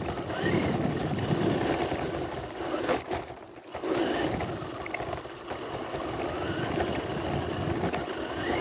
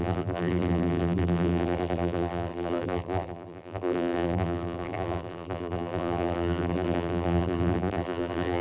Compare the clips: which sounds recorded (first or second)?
first